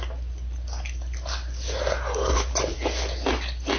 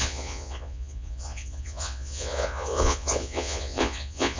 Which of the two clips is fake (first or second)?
second